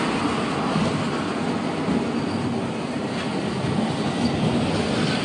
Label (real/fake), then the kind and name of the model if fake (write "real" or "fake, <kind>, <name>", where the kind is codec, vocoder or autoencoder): real